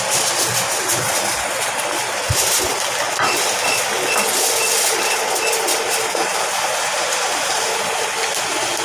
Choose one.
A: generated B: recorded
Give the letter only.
B